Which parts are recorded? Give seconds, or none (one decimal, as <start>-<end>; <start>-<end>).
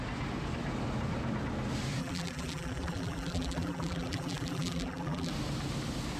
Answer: 0.0-2.0; 5.3-6.2